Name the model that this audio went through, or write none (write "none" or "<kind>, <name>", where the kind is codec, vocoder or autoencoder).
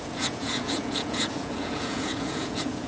vocoder, Vocos